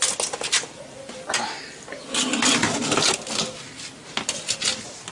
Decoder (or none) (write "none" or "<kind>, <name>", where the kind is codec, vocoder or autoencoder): none